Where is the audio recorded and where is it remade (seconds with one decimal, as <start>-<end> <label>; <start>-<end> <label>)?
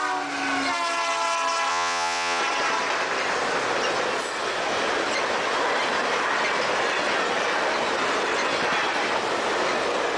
0.0-1.7 recorded; 1.7-2.4 remade; 2.4-10.2 recorded